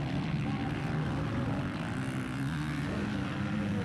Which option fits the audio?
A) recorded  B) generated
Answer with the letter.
A